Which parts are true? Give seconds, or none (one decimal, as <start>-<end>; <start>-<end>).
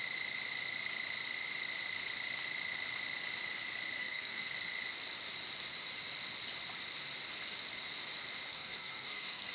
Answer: 0.0-4.0; 4.5-8.5